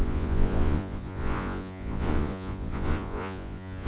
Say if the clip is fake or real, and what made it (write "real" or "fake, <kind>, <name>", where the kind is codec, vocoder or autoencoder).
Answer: fake, vocoder, Vocos